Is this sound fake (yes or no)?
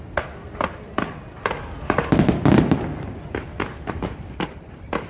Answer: no